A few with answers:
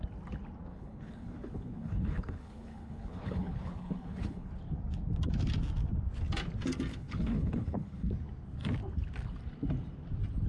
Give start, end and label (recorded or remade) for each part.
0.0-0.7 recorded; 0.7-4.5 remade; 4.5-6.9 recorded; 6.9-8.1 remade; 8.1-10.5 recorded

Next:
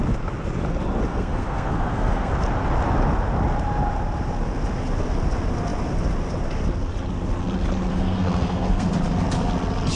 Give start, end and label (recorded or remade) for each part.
0.0-1.1 recorded; 1.1-2.3 remade; 2.3-7.9 recorded; 7.9-8.9 remade; 8.9-9.9 recorded

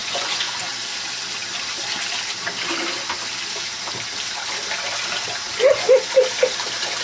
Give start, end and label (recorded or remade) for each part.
0.0-0.7 remade; 0.7-7.0 recorded

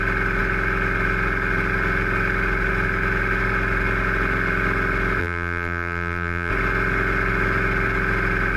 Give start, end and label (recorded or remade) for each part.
0.0-5.2 recorded; 5.2-6.5 remade; 6.5-8.6 recorded

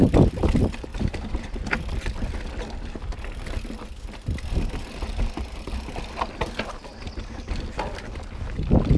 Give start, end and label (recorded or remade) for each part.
0.0-0.9 recorded; 0.9-1.7 remade; 1.7-9.0 recorded